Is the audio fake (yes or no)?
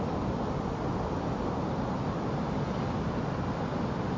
no